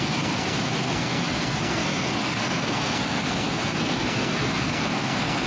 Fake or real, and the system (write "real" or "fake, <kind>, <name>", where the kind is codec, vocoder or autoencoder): fake, codec, SNAC